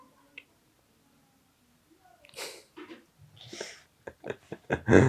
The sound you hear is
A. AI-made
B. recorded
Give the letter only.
B